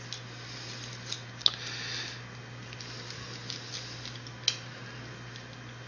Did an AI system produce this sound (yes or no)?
no